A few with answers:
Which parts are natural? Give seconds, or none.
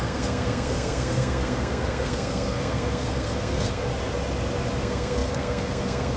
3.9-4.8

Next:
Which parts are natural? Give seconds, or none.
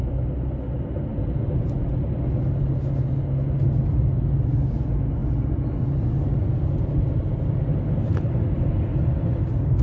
0.0-9.8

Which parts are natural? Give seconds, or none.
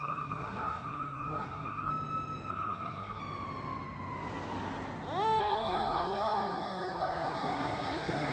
1.9-2.5; 3.2-5.4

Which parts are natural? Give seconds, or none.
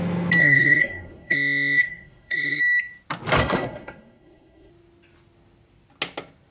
0.0-0.4; 2.6-3.4; 4.7-6.5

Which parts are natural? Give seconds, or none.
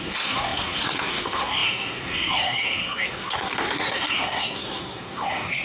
none